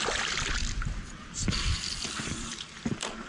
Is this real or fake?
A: fake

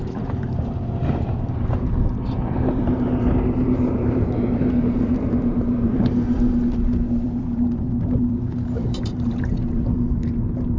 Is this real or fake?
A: fake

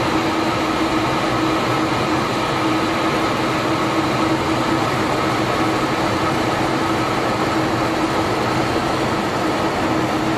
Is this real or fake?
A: real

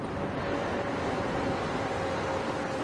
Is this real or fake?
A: real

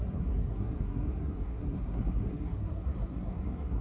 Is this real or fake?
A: fake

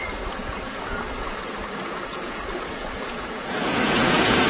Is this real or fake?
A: fake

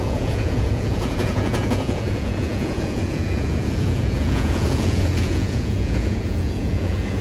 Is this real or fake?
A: fake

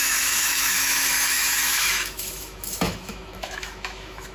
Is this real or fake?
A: fake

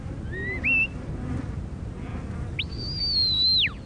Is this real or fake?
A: real